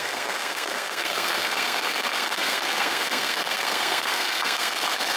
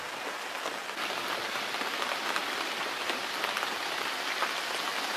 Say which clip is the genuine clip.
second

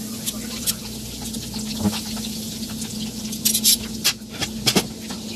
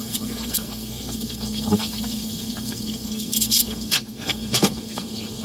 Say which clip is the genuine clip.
first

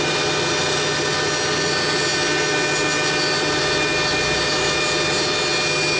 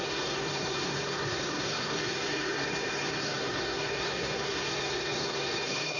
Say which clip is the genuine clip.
first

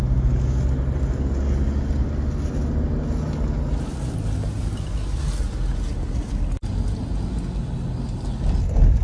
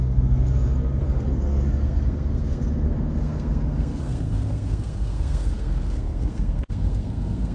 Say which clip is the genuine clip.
first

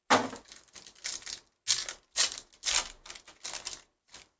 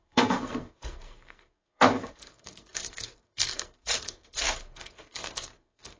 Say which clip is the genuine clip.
first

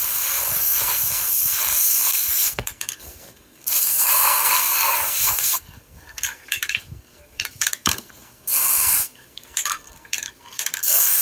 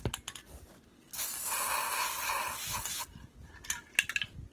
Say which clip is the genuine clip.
second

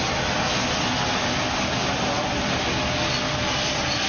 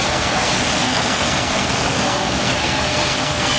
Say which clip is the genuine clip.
first